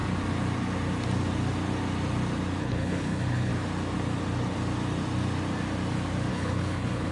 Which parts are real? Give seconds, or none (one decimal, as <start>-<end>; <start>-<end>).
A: 0.0-2.6; 3.5-6.3